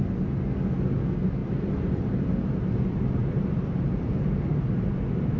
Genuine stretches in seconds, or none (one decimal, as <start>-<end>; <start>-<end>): 0.0-1.4; 2.1-3.2; 4.3-5.4